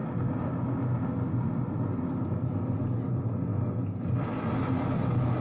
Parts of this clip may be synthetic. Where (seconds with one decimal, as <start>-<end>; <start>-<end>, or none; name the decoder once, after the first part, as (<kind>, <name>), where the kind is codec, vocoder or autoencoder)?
none